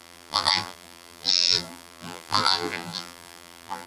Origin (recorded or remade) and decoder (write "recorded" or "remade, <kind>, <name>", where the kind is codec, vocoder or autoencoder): remade, vocoder, BigVGAN v2